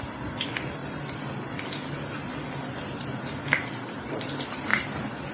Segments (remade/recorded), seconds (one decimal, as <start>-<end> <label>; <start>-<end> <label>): 0.0-5.3 recorded